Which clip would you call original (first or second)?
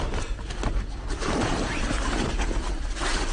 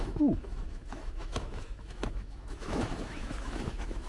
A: first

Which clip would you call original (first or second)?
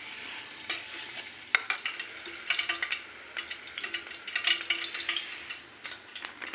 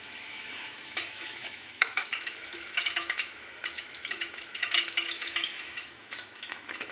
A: first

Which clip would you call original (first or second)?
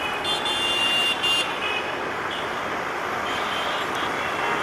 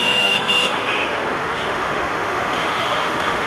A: first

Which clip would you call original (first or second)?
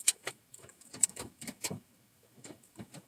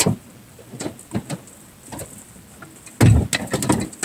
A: second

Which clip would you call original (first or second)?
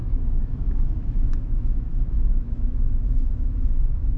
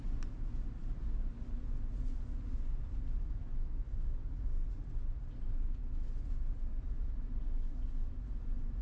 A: second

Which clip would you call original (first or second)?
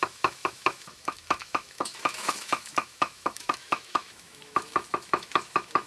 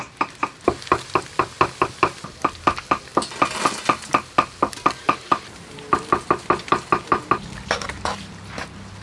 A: second